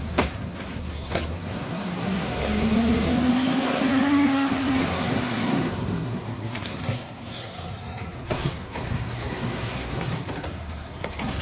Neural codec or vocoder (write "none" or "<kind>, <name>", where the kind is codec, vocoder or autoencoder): codec, SNAC